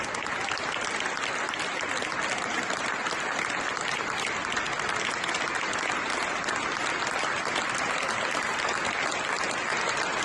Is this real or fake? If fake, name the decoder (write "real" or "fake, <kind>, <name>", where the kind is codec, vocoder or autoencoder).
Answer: real